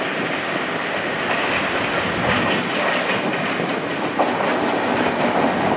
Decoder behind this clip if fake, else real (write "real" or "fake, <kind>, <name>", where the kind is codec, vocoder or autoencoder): real